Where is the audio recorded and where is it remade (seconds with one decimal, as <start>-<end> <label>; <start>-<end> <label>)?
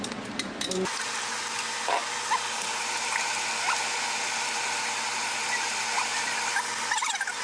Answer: 0.0-7.4 recorded